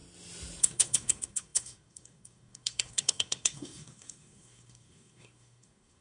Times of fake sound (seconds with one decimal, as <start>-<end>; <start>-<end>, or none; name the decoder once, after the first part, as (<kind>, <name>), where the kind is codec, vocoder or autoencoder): 0.6-6.0 (codec, SNAC)